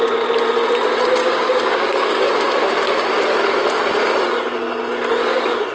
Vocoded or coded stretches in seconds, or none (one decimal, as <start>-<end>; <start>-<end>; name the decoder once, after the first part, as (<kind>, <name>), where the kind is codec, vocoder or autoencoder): 1.2-2.3 (codec, DAC)